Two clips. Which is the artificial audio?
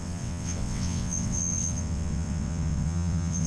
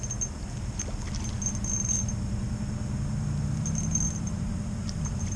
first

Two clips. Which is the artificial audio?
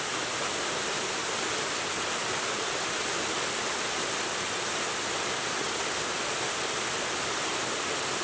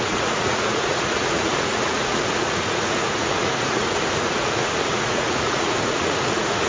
second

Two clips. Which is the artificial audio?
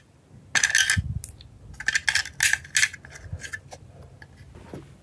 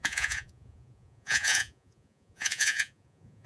second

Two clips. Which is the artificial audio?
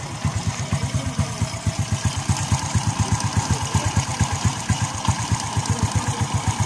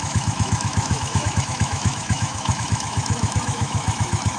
second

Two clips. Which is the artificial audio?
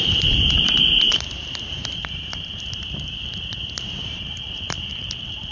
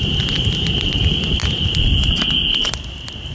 first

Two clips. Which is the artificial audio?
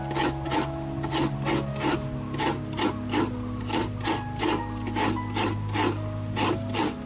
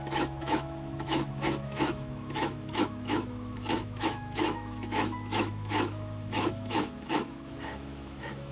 second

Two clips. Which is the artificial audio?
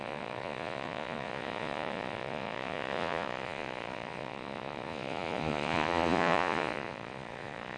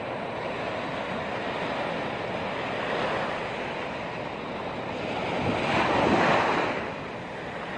first